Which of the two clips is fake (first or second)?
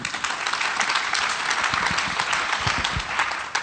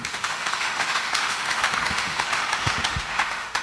second